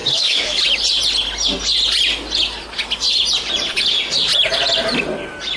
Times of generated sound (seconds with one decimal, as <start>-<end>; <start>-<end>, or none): 0.0-0.6